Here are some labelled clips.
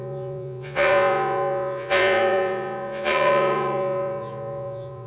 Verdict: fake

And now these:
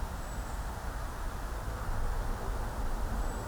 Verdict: real